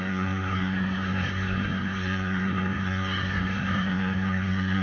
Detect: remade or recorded remade